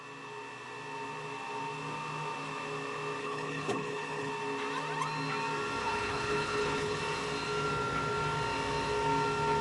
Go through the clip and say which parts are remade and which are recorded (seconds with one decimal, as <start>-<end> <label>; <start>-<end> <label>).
0.0-3.2 recorded; 3.2-4.3 remade; 4.3-5.8 recorded; 5.8-7.0 remade; 7.0-9.6 recorded